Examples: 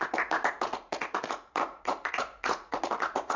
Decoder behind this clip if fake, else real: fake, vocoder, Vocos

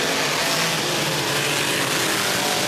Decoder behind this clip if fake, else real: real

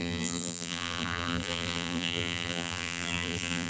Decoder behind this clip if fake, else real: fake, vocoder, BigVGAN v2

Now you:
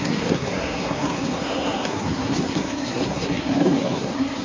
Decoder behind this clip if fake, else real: fake, codec, SNAC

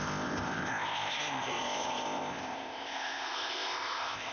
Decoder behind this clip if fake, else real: fake, codec, ZipCodec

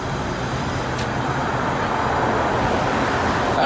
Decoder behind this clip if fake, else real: real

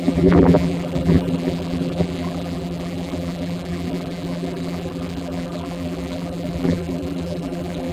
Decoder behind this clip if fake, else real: fake, vocoder, BigVGAN v2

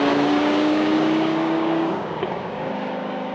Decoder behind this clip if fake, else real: fake, codec, DAC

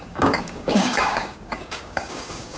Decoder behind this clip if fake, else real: fake, codec, DAC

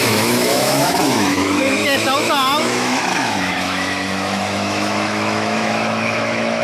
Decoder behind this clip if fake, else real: fake, autoencoder, DAC-VAE